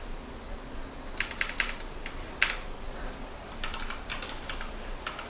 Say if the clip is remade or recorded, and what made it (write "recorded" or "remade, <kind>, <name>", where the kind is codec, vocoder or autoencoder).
recorded